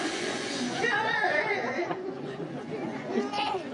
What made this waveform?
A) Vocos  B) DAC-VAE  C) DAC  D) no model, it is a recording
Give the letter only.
A